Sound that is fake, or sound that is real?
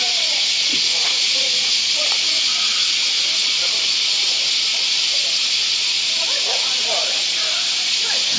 fake